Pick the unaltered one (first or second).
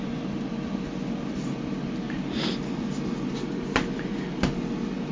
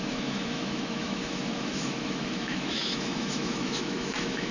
first